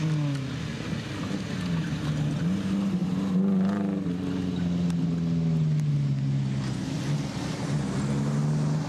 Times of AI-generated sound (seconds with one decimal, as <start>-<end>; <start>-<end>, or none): none